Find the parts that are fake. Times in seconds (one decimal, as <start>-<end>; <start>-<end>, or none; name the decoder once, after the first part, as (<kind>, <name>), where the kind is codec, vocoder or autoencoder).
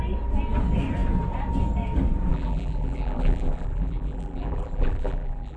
2.3-5.6 (vocoder, BigVGAN v2)